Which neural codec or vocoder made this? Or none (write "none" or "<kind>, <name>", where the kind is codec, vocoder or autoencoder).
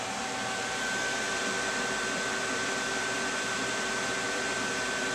vocoder, BigVGAN v2